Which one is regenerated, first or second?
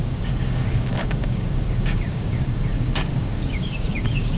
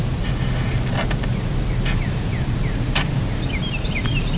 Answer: first